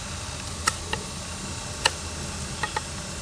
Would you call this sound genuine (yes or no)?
yes